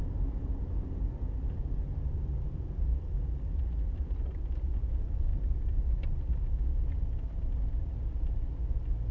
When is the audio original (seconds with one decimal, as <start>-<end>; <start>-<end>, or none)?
0.0-9.1